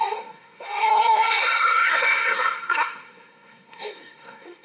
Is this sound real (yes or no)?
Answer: no